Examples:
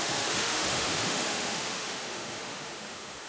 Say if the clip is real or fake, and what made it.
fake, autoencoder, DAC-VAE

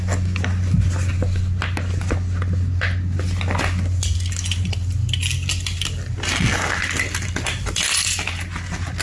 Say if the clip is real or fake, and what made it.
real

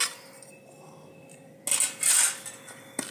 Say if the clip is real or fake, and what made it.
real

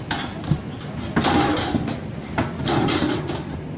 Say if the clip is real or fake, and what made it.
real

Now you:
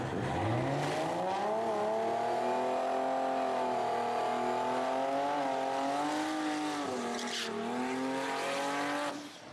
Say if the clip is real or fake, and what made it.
real